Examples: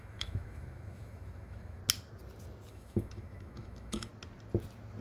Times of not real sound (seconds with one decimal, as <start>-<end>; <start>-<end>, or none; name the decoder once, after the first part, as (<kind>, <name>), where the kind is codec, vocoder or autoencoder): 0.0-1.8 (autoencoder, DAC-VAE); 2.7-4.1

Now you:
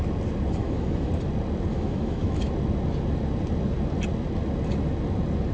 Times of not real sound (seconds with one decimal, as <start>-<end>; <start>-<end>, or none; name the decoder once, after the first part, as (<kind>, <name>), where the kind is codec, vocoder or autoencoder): 0.6-1.1 (autoencoder, DAC-VAE); 1.7-2.5

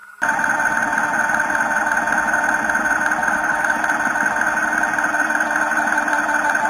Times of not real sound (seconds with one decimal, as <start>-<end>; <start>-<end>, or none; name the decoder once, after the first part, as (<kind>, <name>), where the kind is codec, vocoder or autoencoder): 3.2-3.8 (autoencoder, DAC-VAE)

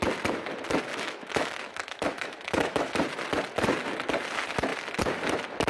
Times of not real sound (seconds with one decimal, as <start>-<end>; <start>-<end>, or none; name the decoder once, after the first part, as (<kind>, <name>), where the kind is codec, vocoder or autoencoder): 0.9-2.9 (autoencoder, DAC-VAE)

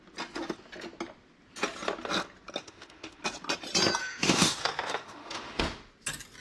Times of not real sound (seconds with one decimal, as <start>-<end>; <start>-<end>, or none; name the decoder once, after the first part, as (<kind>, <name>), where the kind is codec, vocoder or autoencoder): 2.6-3.2 (autoencoder, DAC-VAE); 4.0-5.6

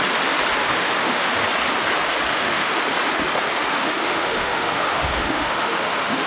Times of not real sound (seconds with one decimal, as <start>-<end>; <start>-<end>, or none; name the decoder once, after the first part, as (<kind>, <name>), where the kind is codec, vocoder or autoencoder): 0.6-1.3 (autoencoder, DAC-VAE); 2.3-2.8; 3.7-6.3